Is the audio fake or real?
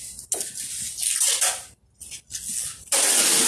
real